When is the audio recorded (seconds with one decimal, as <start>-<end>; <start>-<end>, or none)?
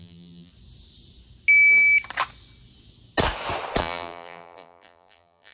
0.5-3.8